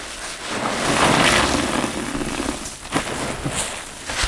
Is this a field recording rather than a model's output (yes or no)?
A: yes